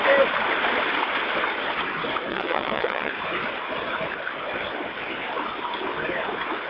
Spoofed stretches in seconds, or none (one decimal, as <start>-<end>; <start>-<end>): 2.3-3.1

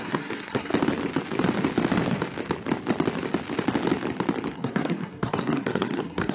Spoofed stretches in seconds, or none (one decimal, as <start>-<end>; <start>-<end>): 0.0-0.7; 4.5-6.3

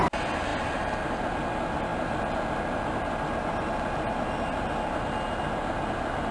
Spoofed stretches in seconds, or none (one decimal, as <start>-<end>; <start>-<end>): none

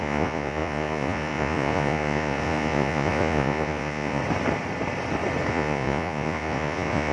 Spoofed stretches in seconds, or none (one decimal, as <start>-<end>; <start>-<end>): 0.0-4.2; 5.5-7.1

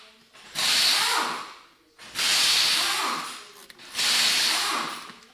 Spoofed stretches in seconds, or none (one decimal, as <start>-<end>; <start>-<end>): none

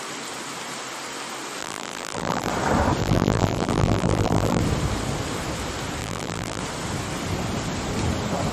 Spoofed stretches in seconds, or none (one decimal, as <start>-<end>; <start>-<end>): 1.6-2.5; 3.0-4.6; 6.0-6.6

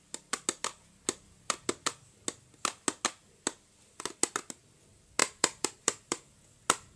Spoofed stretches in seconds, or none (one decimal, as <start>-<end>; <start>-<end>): 5.2-6.3